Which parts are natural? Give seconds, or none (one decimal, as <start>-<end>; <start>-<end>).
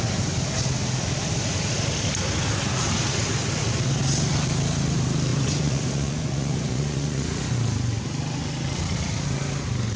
0.0-5.3; 7.4-10.0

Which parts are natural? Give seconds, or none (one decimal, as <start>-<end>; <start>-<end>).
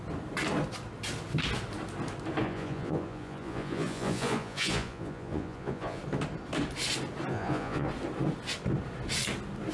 0.0-2.4; 6.0-7.3; 7.9-9.7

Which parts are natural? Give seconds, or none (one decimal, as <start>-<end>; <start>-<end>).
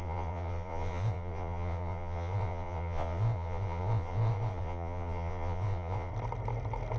6.1-7.0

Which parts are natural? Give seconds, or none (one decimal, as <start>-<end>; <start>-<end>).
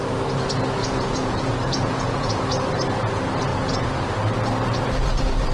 0.0-0.8; 2.4-3.5; 4.0-5.5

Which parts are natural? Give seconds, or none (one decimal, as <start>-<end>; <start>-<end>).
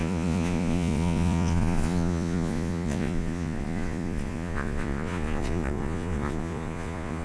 none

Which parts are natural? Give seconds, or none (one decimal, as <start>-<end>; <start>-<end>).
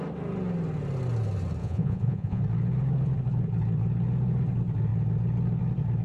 0.0-1.6; 2.4-6.0